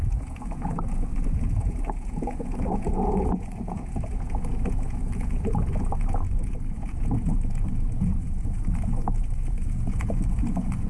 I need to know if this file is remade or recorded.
remade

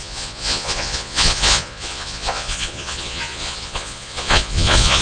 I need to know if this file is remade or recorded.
remade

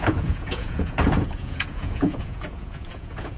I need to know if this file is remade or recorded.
remade